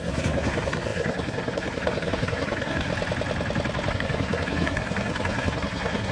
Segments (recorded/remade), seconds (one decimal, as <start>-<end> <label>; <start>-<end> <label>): 0.0-2.9 remade; 2.9-3.9 recorded; 3.9-6.1 remade